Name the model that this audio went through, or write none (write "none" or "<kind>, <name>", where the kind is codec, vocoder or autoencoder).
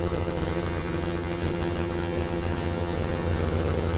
vocoder, HiFi-GAN